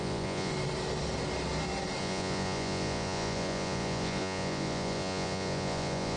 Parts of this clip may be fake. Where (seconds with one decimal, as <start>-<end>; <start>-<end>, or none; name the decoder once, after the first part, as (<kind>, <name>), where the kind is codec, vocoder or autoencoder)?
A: 0.0-0.5 (vocoder, Vocos); 2.0-6.2